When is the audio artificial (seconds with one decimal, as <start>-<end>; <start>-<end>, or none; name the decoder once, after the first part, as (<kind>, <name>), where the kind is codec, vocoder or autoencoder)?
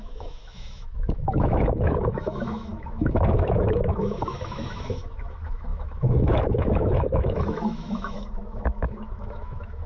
0.0-9.9 (autoencoder, DAC-VAE)